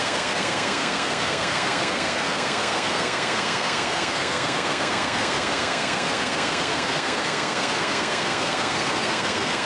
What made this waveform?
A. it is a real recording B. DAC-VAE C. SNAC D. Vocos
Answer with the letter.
C